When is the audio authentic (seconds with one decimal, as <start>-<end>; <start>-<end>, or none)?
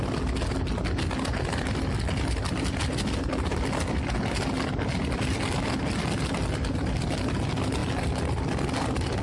0.0-9.2